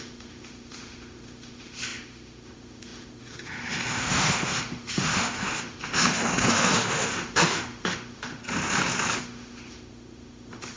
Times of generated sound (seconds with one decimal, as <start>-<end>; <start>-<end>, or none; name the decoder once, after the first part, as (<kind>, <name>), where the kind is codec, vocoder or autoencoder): 0.0-8.4 (autoencoder, DAC-VAE); 9.2-10.8